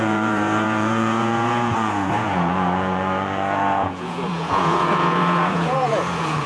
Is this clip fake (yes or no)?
yes